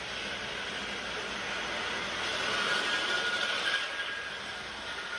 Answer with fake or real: real